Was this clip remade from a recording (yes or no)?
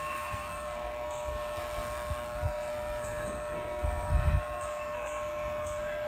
yes